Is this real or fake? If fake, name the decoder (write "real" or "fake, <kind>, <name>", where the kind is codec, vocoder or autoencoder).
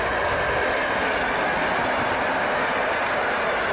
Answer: real